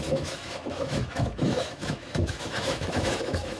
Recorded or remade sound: remade